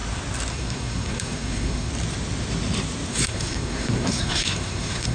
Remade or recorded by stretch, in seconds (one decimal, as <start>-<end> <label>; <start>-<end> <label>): 0.0-0.5 recorded; 0.5-1.9 remade; 1.9-3.1 recorded; 3.1-5.1 remade